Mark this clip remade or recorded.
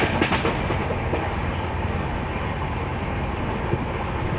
recorded